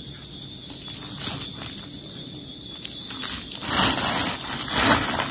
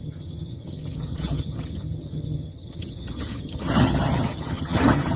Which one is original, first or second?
first